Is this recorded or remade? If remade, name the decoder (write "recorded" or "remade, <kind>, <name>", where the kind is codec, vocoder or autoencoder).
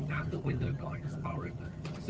remade, vocoder, HiFi-GAN